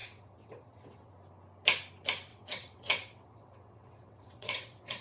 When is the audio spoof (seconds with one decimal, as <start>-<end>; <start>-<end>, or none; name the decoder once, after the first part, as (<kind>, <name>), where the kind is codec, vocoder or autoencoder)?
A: 0.0-1.1 (vocoder, WaveNeXt); 2.3-5.0